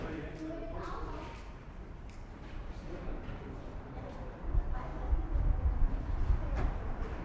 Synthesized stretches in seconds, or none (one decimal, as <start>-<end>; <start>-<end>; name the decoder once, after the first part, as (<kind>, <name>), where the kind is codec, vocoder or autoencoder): 0.0-4.9 (vocoder, BigVGAN v2); 5.7-7.2